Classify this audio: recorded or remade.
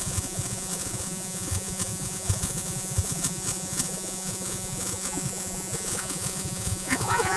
remade